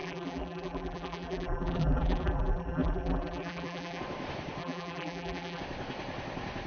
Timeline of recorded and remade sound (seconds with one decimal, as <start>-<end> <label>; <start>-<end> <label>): 0.0-4.0 remade; 4.0-4.6 recorded; 4.6-5.6 remade; 5.6-6.7 recorded